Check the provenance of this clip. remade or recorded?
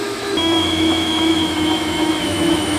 remade